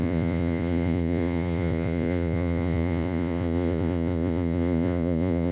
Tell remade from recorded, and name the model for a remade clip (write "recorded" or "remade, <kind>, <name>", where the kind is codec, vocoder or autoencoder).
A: remade, vocoder, Vocos